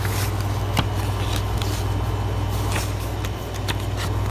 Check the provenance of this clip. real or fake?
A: real